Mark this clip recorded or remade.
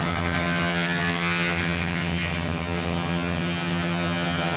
remade